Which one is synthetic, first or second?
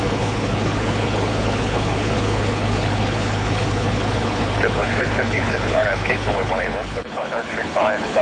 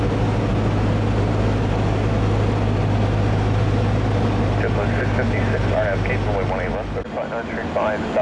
first